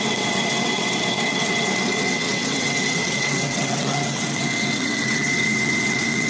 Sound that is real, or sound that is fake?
fake